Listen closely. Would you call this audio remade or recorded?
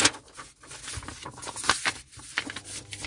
recorded